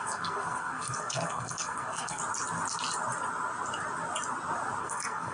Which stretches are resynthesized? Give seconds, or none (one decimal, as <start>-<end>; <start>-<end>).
0.0-2.2; 4.8-5.3